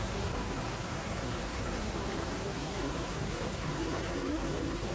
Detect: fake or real fake